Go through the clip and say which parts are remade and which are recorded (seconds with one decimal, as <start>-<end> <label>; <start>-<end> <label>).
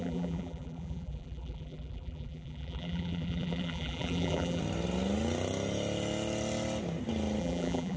0.0-4.6 remade; 4.6-7.4 recorded; 7.4-8.0 remade